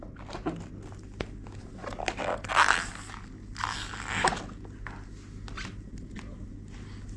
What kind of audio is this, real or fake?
real